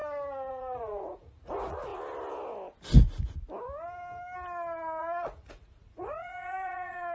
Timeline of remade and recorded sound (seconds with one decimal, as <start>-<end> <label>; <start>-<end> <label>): 0.0-0.5 recorded; 0.5-1.9 remade; 1.9-5.0 recorded; 5.0-7.1 remade